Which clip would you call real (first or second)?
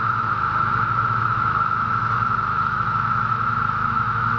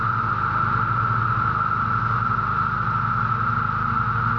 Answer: second